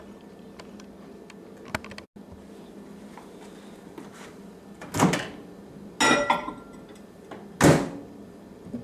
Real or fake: real